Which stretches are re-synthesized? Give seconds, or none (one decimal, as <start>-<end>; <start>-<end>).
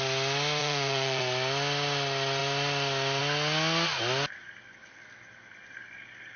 0.6-1.2